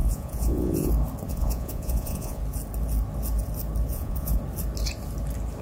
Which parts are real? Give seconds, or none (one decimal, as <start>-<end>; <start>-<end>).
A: 0.9-1.3; 2.4-3.9; 4.4-5.6